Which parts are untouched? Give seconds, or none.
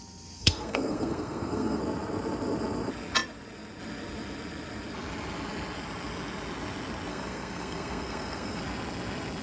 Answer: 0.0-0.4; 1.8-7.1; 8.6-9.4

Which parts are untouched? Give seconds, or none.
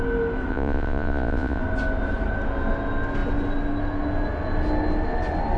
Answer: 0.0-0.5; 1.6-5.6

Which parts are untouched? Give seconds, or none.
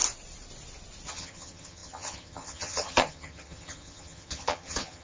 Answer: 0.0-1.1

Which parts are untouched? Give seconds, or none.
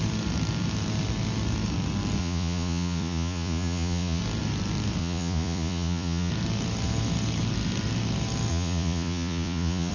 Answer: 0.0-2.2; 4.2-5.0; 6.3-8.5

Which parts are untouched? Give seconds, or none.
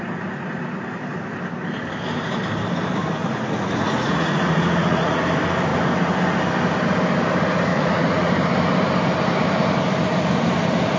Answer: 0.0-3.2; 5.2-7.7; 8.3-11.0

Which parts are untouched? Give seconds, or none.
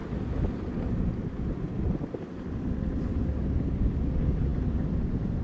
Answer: 0.0-5.4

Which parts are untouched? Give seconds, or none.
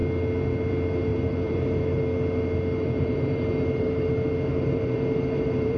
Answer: 0.0-1.1; 2.0-2.8; 4.1-4.5